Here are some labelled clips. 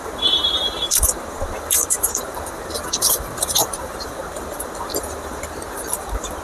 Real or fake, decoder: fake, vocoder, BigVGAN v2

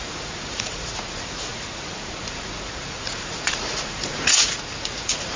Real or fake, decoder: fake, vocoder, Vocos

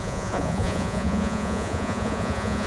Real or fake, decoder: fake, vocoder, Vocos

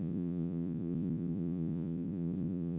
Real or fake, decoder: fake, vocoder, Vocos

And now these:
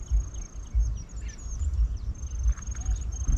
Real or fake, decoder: real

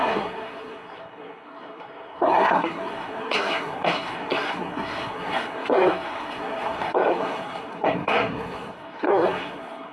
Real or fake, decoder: fake, codec, SNAC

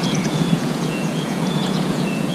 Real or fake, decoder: fake, vocoder, Vocos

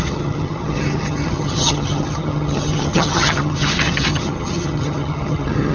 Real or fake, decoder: fake, vocoder, HiFi-GAN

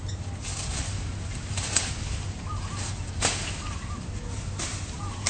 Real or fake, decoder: real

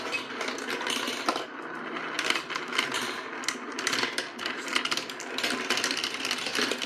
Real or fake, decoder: real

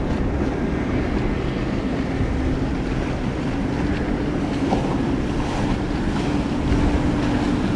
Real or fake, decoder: real